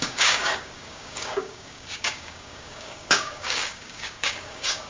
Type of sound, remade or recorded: remade